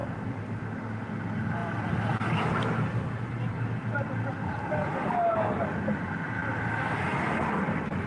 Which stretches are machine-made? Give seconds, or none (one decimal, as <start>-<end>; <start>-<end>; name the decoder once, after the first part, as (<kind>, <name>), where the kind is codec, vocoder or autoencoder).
0.0-0.6 (vocoder, BigVGAN v2); 1.6-2.4; 4.3-5.1